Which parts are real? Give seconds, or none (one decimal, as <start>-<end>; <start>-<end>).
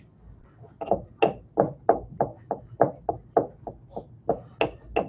0.0-5.1